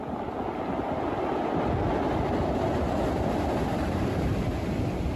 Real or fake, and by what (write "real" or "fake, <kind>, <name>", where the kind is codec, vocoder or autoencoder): real